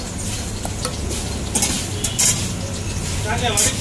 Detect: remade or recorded recorded